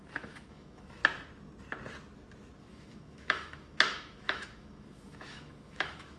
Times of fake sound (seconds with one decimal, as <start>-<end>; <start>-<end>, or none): 0.0-1.0; 2.6-6.2